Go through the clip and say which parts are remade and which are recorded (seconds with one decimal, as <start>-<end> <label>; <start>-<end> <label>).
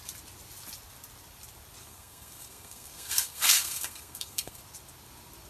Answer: 0.0-1.8 recorded; 1.8-4.6 remade; 4.6-5.5 recorded